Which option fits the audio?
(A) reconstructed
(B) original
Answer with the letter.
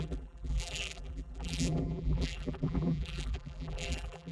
A